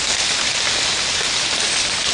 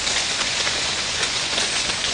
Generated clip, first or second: second